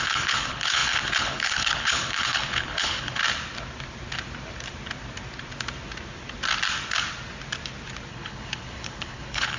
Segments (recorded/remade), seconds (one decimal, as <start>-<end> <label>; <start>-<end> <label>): 0.0-3.2 remade; 3.2-8.1 recorded; 8.1-9.6 remade

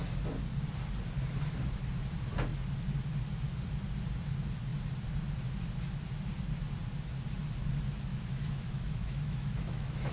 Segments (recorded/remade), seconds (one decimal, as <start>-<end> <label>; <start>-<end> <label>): 0.0-8.1 recorded; 8.1-10.1 remade

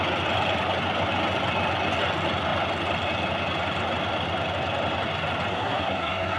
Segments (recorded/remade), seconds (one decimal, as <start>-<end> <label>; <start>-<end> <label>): 0.0-5.5 recorded; 5.5-6.4 remade

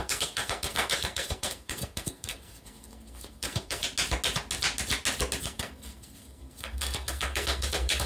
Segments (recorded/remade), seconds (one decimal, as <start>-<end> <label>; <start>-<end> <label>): 0.0-3.8 remade; 3.8-5.4 recorded; 5.4-8.1 remade

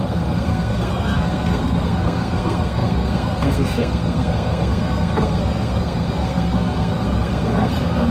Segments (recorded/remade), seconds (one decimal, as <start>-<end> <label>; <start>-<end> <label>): 0.0-8.1 remade

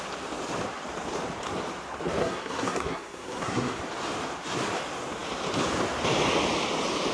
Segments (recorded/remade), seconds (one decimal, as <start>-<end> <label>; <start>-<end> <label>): 0.0-2.2 recorded; 2.2-3.8 remade; 3.8-7.1 recorded